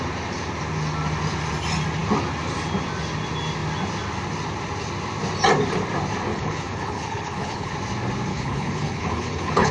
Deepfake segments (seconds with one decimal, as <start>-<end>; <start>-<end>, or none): 6.3-7.7; 8.3-9.7